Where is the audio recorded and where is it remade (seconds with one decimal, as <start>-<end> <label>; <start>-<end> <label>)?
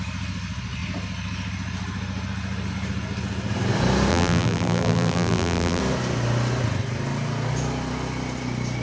0.0-4.1 recorded; 4.1-5.8 remade; 5.8-8.8 recorded